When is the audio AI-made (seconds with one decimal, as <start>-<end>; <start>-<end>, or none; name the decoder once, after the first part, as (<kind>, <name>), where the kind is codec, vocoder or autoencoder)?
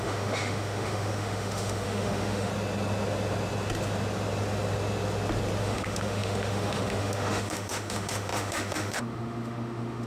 0.0-2.5 (autoencoder, DAC-VAE); 5.6-10.1